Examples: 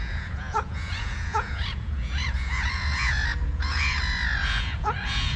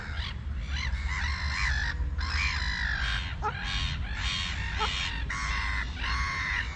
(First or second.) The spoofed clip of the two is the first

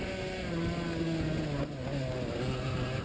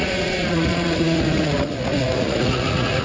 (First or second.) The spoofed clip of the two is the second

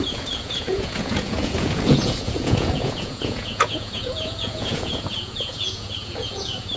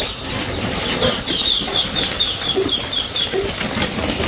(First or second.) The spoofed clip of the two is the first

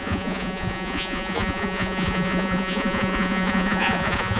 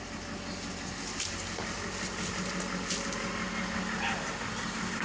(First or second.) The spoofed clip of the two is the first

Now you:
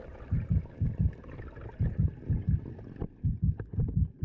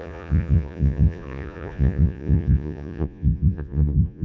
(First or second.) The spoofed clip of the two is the second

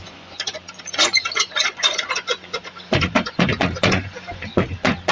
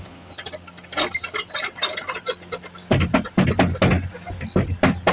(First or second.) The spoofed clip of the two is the first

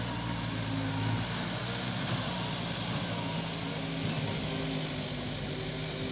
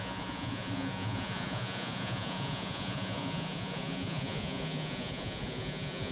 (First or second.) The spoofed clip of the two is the second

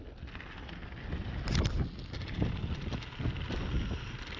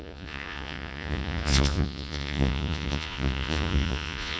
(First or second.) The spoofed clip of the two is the second